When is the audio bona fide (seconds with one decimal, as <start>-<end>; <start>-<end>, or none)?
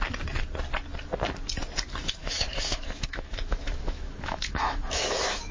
0.0-2.2